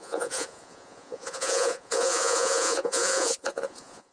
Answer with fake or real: fake